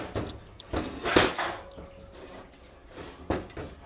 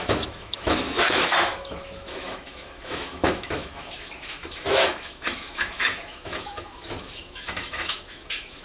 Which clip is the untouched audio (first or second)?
first